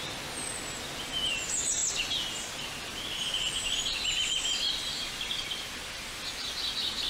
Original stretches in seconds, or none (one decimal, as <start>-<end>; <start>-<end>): 0.0-7.1